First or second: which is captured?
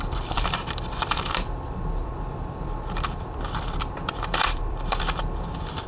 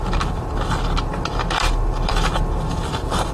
second